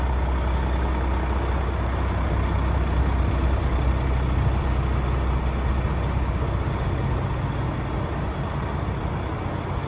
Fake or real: real